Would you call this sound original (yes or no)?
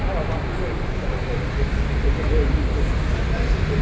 yes